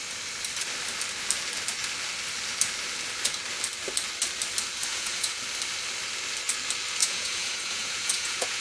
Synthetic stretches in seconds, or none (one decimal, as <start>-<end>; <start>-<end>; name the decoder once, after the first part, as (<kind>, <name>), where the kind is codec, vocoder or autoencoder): 4.9-5.4 (vocoder, Vocos); 7.0-8.6